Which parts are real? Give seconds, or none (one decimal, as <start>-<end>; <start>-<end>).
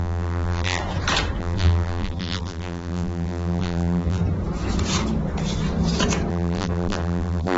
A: 0.8-1.4; 4.2-6.3